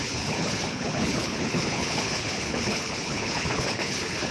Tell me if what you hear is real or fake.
fake